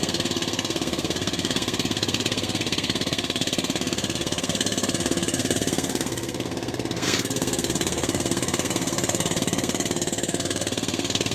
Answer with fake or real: fake